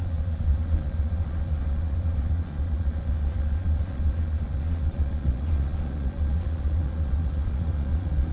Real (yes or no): no